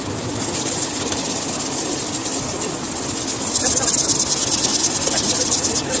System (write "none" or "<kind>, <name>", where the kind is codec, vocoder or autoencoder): none